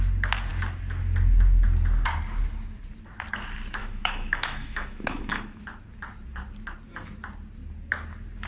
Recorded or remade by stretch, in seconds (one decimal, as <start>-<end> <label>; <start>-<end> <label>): 0.0-3.8 recorded; 3.8-5.6 remade; 5.6-8.5 recorded